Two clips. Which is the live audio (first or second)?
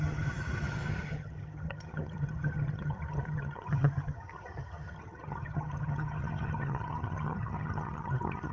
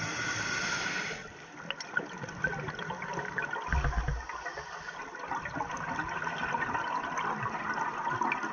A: second